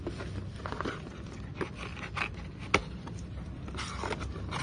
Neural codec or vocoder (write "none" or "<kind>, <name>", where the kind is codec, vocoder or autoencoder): none